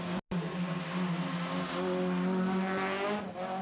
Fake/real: real